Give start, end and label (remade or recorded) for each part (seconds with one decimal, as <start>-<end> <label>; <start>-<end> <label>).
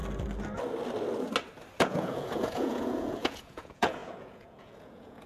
0.0-1.8 recorded; 1.8-5.3 remade